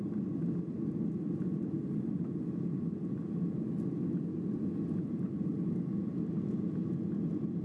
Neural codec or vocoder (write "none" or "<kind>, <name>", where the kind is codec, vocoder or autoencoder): none